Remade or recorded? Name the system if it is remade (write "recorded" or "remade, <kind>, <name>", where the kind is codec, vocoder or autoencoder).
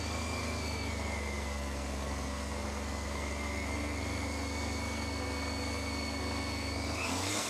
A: remade, codec, SNAC